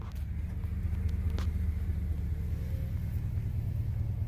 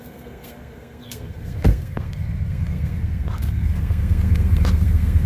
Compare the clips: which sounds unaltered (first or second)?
first